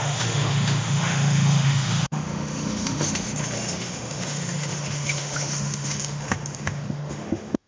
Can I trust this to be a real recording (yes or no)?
no